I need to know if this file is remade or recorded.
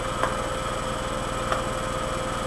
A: recorded